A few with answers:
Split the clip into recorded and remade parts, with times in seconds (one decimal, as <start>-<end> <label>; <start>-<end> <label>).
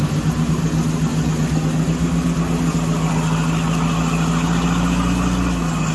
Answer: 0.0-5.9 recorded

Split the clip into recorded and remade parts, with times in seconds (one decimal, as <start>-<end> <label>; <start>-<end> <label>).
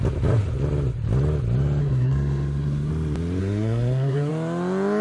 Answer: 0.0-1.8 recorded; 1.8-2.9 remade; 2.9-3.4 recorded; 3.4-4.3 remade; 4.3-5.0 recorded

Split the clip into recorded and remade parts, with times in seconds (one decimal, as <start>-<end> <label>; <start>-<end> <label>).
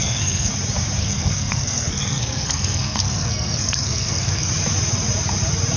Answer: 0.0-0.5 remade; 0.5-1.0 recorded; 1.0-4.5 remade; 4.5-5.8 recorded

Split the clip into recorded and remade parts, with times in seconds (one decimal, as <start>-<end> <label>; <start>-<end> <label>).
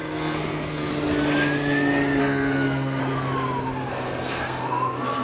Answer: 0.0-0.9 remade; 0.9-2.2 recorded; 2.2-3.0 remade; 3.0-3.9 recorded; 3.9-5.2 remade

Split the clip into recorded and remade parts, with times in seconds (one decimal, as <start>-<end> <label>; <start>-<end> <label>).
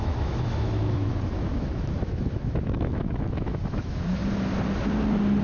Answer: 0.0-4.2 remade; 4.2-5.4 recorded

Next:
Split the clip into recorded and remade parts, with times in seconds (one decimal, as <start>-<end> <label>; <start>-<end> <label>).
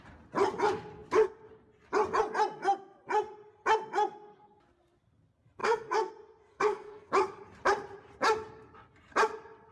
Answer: 0.0-5.6 recorded; 5.6-6.1 remade; 6.1-6.5 recorded; 6.5-7.1 remade; 7.1-9.7 recorded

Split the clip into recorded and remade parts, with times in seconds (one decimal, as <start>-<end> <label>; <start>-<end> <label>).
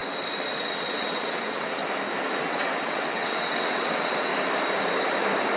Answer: 0.0-0.6 recorded; 0.6-1.8 remade; 1.8-2.4 recorded; 2.4-4.3 remade; 4.3-5.6 recorded